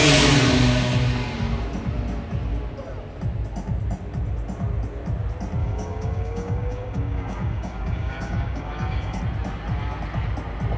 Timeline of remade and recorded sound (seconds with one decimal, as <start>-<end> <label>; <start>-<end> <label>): 0.0-5.6 recorded; 5.6-9.2 remade; 9.2-10.8 recorded